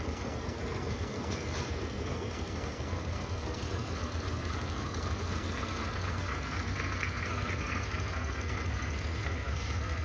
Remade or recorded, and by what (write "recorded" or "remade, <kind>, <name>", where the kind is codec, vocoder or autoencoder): remade, codec, SNAC